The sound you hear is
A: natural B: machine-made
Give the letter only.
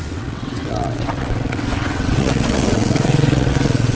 B